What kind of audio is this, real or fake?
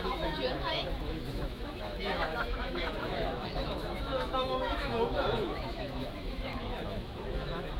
fake